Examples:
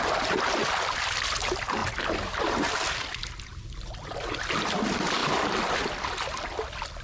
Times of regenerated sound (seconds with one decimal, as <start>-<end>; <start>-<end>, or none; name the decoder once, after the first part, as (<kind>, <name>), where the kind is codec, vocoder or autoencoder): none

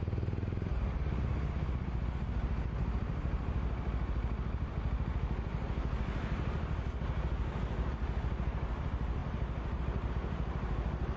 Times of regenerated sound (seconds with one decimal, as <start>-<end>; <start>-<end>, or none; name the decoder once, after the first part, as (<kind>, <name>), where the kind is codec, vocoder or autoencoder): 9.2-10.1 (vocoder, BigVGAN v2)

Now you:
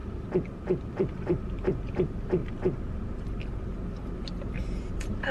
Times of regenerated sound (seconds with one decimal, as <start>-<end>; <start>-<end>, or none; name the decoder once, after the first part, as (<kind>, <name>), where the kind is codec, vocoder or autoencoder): 0.9-2.4 (vocoder, BigVGAN v2); 3.9-5.3

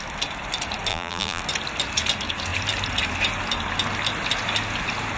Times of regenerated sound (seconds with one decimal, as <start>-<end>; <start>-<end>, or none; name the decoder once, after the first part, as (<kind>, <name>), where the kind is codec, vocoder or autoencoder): 0.9-1.4 (vocoder, BigVGAN v2)

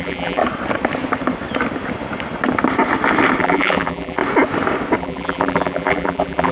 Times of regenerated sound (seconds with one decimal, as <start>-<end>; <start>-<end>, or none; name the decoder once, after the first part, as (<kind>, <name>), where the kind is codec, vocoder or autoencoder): 0.0-0.4 (vocoder, BigVGAN v2); 3.4-4.2; 5.0-6.5

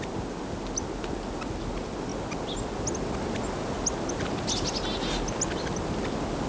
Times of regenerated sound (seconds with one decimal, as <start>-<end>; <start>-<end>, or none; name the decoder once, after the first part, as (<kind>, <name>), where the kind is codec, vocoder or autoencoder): none